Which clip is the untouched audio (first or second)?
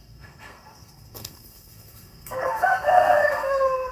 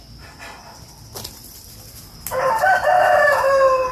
second